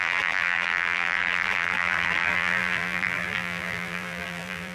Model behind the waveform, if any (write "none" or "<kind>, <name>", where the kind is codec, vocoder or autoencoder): vocoder, BigVGAN v2